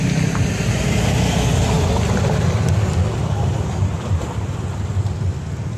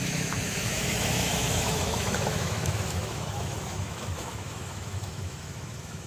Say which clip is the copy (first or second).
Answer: second